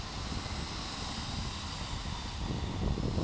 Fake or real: real